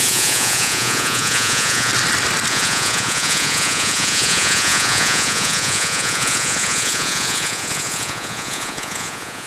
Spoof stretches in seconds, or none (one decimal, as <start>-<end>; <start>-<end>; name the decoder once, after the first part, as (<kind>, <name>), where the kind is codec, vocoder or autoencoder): 0.0-1.9 (vocoder, Vocos); 2.5-9.5